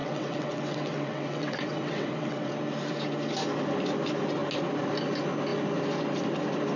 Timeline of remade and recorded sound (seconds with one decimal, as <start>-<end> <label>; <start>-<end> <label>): 0.0-2.5 remade; 2.5-6.8 recorded